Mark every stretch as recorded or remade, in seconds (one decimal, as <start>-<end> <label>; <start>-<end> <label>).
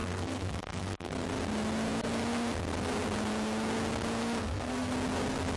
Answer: 0.0-1.1 remade; 1.1-4.4 recorded; 4.4-4.9 remade; 4.9-5.6 recorded